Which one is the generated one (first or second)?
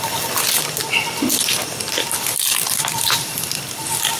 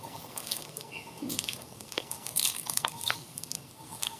second